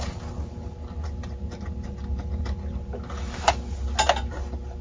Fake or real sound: real